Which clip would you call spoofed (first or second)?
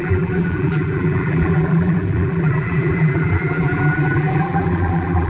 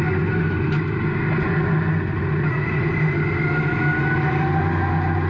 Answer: first